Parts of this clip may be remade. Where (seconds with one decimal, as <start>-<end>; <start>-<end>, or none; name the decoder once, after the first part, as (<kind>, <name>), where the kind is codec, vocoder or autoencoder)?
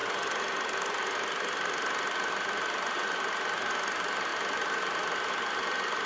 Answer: none